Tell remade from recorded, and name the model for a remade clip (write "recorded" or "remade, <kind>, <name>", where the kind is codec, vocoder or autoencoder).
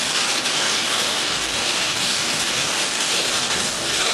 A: remade, codec, DAC